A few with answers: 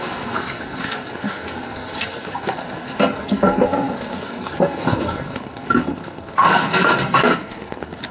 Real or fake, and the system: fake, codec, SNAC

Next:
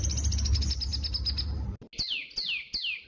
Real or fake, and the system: real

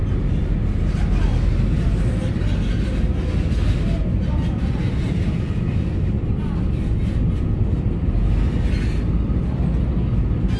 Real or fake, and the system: real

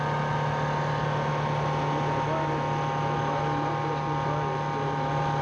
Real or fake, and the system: real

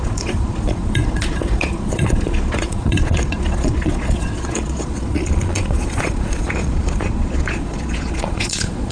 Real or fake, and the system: fake, vocoder, Vocos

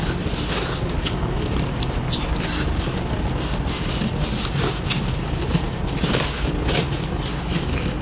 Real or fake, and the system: real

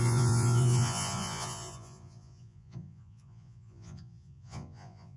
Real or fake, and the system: fake, vocoder, Vocos